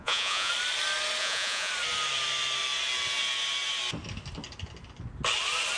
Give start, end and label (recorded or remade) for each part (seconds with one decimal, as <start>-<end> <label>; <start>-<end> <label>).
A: 0.0-0.5 remade; 0.5-1.2 recorded; 1.2-1.7 remade; 1.7-5.8 recorded